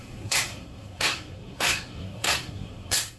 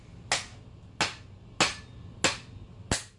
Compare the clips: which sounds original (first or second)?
second